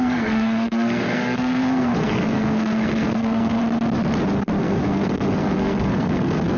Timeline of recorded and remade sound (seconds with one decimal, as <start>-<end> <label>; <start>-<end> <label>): 0.0-3.6 remade; 3.6-4.6 recorded; 4.6-6.6 remade